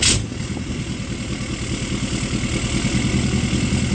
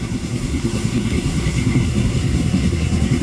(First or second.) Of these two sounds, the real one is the first